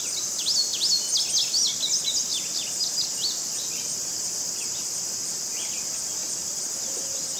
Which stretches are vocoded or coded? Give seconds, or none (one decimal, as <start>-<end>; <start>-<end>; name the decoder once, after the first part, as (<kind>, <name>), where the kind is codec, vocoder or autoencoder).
none